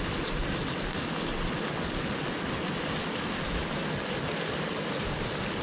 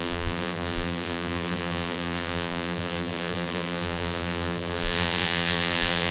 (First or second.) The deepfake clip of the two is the second